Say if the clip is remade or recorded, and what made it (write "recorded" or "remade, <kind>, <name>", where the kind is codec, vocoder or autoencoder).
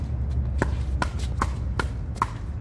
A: recorded